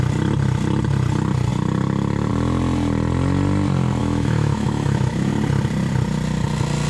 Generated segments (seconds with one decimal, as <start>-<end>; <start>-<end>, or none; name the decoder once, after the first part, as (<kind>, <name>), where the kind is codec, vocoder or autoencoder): 4.0-5.3 (autoencoder, DAC-VAE)